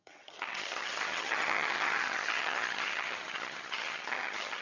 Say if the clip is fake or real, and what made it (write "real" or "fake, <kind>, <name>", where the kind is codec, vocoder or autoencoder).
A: fake, vocoder, HiFi-GAN